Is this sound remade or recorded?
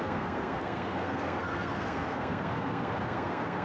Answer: remade